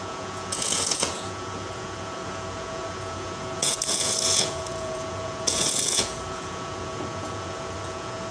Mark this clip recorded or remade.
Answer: remade